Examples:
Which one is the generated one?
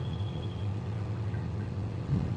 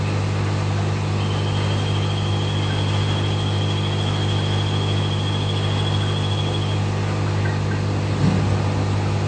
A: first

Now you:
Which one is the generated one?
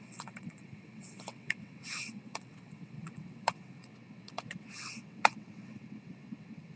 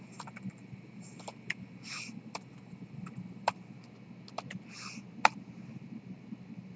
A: first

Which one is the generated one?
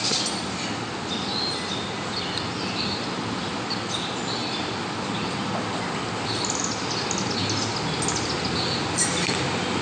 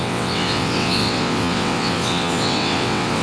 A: second